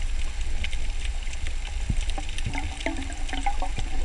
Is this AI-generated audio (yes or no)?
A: no